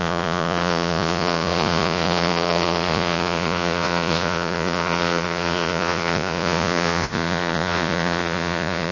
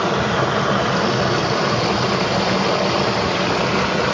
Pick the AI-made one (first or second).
first